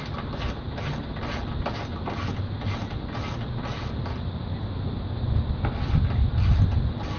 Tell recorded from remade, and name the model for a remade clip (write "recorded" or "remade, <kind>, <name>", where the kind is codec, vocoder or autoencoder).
recorded